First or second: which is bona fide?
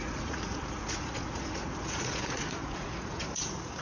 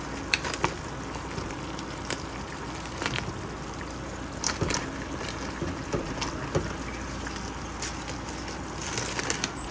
second